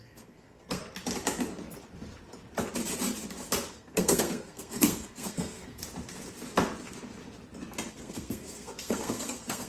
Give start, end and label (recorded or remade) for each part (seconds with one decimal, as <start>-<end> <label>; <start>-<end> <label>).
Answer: 0.0-0.8 remade; 0.8-3.7 recorded; 3.7-5.8 remade; 5.8-7.9 recorded; 7.9-9.7 remade